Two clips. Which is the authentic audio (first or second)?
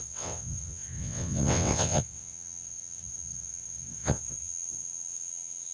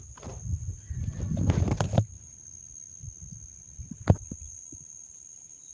second